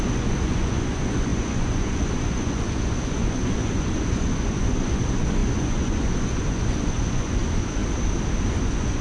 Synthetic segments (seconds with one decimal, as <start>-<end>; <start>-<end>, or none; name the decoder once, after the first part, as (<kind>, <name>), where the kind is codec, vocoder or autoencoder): 0.0-7.8 (vocoder, Vocos); 8.6-9.0

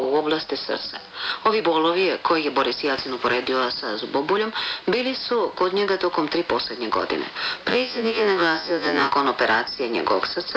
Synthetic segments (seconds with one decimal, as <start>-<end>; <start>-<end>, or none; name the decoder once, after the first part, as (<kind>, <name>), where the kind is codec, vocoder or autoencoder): 7.7-9.1 (vocoder, Vocos)

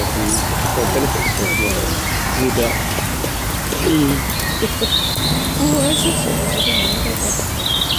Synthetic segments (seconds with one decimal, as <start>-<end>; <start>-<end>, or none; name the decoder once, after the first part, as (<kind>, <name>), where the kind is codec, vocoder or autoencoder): none

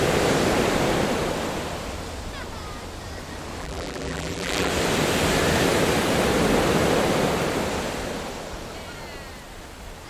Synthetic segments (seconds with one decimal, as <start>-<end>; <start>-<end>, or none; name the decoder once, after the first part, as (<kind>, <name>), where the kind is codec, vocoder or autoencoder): 3.6-4.7 (vocoder, BigVGAN v2)

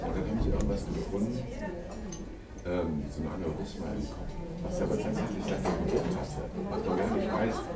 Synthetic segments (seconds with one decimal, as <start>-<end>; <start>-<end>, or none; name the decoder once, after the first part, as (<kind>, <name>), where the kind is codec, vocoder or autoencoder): 1.0-2.3 (vocoder, Vocos); 3.9-6.1